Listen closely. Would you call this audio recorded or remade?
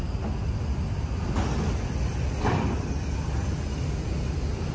recorded